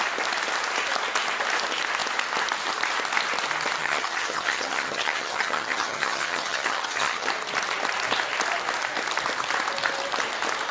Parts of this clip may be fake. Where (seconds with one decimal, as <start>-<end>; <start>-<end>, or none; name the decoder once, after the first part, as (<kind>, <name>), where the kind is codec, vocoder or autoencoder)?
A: 3.8-7.3 (vocoder, HiFi-GAN)